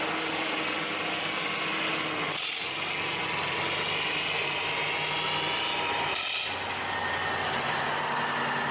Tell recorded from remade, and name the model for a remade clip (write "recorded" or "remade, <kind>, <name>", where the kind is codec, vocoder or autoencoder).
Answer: recorded